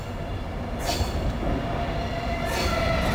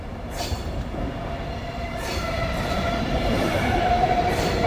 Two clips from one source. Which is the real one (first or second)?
first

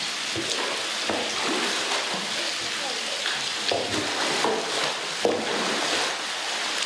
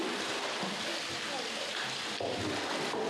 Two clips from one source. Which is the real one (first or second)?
first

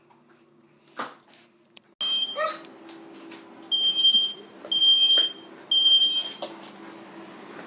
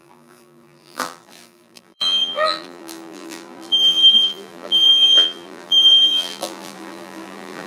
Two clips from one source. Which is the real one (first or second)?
first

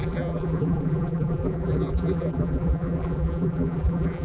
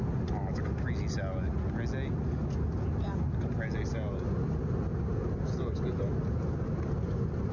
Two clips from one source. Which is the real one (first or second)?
second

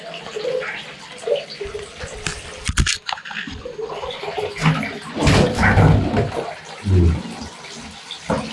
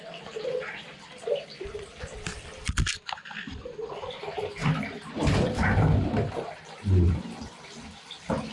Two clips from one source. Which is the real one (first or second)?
first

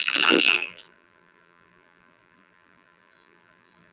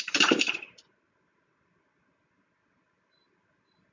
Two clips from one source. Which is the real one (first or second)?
second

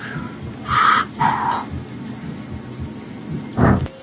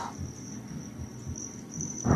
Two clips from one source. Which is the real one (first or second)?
first